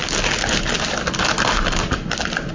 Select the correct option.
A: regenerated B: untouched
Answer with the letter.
B